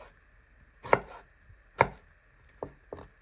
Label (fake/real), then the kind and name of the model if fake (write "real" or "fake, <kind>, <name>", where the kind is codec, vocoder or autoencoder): real